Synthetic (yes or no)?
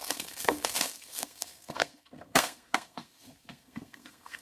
yes